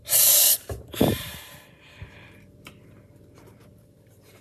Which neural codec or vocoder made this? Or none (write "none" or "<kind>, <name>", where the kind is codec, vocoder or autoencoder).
vocoder, BigVGAN v2